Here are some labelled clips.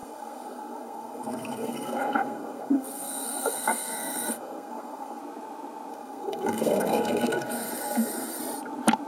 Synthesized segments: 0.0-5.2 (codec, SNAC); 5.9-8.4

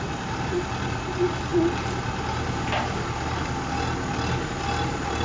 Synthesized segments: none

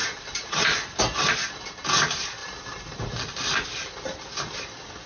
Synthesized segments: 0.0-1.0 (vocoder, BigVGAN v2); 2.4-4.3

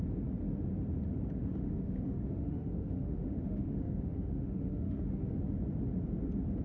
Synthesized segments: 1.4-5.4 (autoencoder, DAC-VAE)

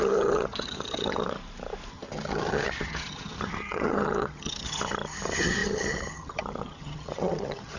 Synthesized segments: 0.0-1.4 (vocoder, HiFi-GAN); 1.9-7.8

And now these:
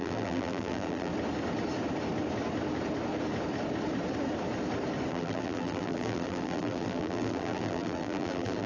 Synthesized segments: 0.0-1.1 (vocoder, BigVGAN v2); 5.1-8.7

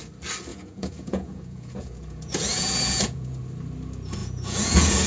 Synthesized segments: 0.5-3.4 (vocoder, Vocos); 4.2-5.1